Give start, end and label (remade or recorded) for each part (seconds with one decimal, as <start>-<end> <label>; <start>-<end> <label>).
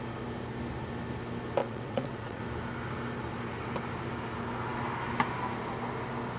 0.0-1.6 recorded; 1.6-2.4 remade; 2.4-6.4 recorded